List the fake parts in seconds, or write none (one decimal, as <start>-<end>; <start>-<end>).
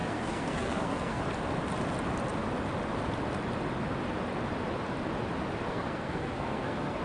0.0-1.2; 5.7-7.0